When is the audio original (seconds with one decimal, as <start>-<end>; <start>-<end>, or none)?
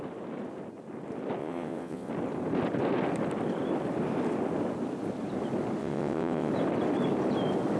0.0-1.4; 2.1-5.8; 6.5-7.8